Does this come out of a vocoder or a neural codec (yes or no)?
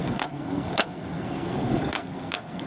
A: yes